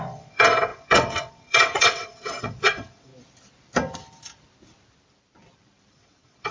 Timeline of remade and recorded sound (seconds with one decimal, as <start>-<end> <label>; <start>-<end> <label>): 0.0-3.1 remade; 3.1-5.9 recorded; 5.9-6.5 remade

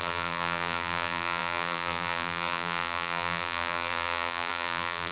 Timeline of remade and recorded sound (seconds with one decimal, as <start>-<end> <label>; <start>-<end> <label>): 0.0-5.1 remade

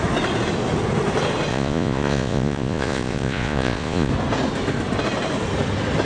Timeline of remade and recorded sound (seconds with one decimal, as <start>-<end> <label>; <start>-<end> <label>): 0.0-1.5 recorded; 1.5-4.1 remade; 4.1-6.1 recorded